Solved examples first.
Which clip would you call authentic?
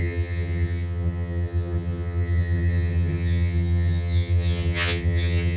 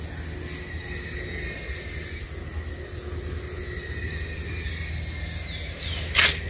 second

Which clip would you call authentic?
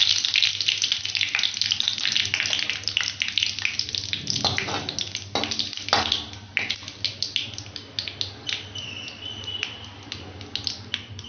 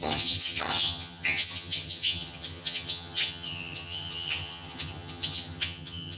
first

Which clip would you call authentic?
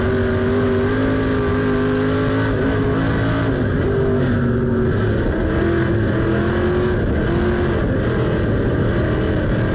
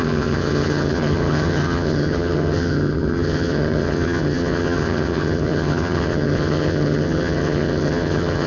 first